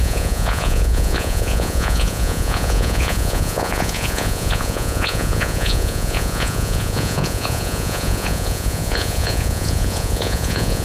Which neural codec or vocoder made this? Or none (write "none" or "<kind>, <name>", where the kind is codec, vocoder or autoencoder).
vocoder, Vocos